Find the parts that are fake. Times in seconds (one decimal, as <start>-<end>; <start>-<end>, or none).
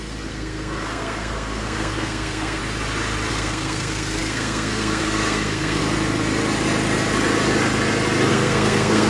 0.0-2.6; 3.3-5.8; 8.3-9.1